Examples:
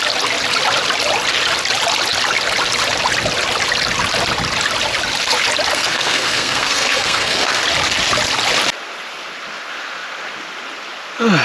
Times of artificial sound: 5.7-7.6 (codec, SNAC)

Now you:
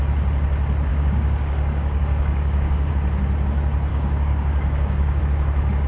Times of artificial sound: 0.9-2.9 (codec, DAC); 3.9-5.2